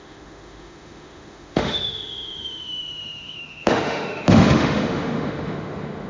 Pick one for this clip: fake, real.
fake